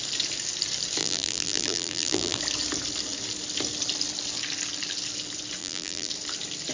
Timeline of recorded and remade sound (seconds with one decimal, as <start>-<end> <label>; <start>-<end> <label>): 0.0-1.0 recorded; 1.0-2.4 remade; 2.4-5.6 recorded; 5.6-6.1 remade; 6.1-6.7 recorded